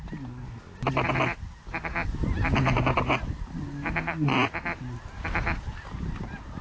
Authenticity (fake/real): real